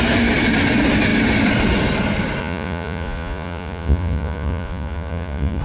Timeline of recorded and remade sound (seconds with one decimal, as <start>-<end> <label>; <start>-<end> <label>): 0.0-2.4 recorded; 2.4-5.6 remade